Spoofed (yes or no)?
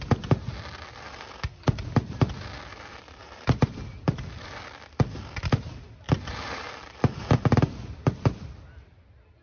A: no